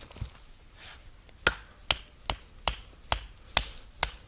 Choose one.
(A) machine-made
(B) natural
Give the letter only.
B